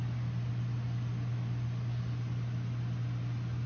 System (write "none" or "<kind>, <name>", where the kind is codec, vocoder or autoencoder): none